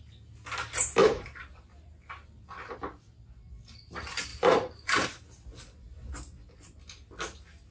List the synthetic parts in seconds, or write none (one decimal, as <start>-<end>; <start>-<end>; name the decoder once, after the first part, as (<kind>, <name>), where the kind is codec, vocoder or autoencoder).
1.0-2.1 (vocoder, BigVGAN v2); 4.3-6.1